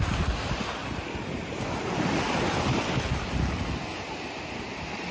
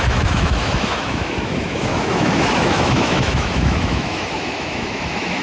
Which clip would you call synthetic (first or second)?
second